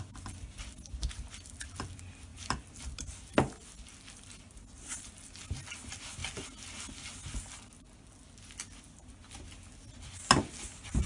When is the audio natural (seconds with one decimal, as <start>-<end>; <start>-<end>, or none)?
0.0-11.1